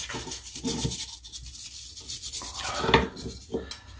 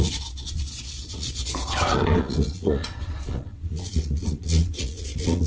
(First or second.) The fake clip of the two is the second